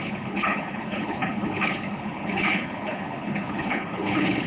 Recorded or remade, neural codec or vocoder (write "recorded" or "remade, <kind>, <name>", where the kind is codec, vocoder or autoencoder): remade, codec, HILCodec